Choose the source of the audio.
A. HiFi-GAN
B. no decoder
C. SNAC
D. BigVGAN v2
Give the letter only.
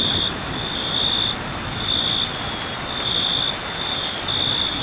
B